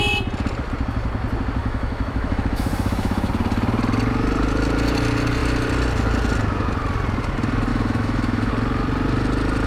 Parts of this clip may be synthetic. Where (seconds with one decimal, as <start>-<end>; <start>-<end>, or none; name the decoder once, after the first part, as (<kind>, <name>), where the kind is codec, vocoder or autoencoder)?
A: 1.6-3.3 (autoencoder, DAC-VAE); 7.7-8.5